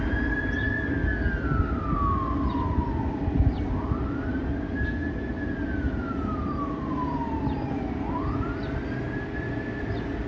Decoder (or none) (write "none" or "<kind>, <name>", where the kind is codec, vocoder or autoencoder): none